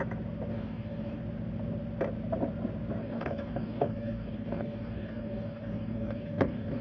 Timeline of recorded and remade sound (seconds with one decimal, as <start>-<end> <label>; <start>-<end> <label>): 0.0-0.5 recorded; 0.5-1.2 remade; 1.2-3.0 recorded; 3.0-6.8 remade